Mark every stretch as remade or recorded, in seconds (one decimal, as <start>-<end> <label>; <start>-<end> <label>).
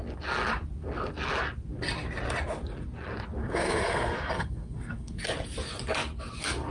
0.0-3.4 recorded; 3.4-5.2 remade; 5.2-6.7 recorded